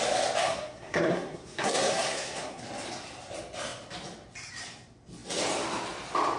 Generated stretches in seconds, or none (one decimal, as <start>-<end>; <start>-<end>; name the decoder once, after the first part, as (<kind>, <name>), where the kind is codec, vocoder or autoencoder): 0.4-2.6 (codec, SNAC)

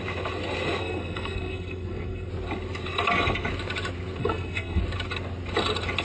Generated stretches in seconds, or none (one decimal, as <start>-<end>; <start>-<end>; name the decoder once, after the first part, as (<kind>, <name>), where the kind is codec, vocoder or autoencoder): 0.8-2.3 (codec, SNAC); 4.2-4.8

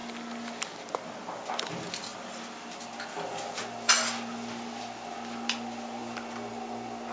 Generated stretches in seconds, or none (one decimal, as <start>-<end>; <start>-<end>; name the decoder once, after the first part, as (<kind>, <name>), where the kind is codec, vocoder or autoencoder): none

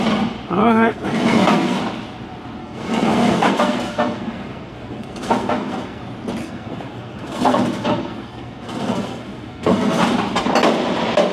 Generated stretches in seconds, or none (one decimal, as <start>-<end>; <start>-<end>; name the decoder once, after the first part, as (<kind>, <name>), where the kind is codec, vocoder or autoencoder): 0.6-1.8 (codec, SNAC); 2.6-6.0; 6.4-10.0

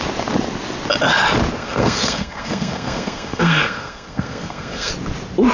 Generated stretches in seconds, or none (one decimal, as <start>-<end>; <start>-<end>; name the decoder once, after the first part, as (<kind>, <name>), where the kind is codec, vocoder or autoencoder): 1.6-4.9 (codec, SNAC)